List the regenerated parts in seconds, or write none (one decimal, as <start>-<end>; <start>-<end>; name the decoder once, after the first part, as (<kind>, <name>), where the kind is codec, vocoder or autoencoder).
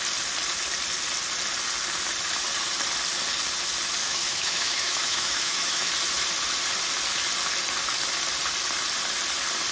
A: 4.0-5.9 (autoencoder, DAC-VAE)